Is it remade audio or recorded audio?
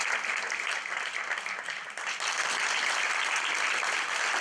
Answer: recorded